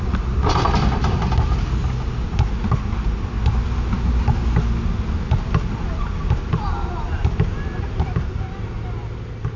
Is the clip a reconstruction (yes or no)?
no